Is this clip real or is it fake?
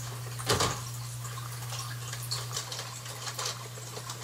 real